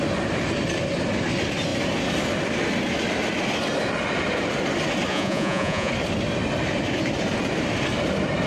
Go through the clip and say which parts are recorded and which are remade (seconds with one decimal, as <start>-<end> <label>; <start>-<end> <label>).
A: 0.0-5.1 recorded; 5.1-5.9 remade; 5.9-8.5 recorded

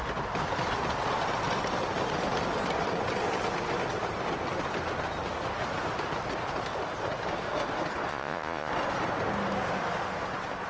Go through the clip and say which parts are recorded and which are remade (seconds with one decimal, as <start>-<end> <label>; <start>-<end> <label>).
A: 0.0-8.1 recorded; 8.1-8.7 remade; 8.7-10.7 recorded